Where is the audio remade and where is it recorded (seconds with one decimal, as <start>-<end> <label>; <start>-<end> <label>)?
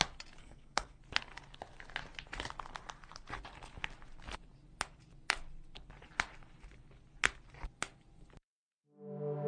0.0-0.4 recorded; 0.4-1.0 remade; 1.0-9.5 recorded